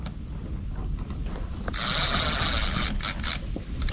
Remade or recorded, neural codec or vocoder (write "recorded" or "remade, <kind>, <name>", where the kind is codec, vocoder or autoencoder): recorded